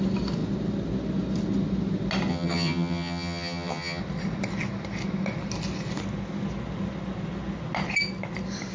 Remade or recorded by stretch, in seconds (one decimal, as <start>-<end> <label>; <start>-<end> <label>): 0.0-2.3 recorded; 2.3-4.0 remade; 4.0-8.7 recorded